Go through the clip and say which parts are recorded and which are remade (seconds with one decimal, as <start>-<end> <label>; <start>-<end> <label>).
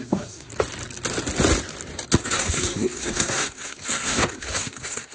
0.0-0.5 remade; 0.5-2.2 recorded; 2.2-5.1 remade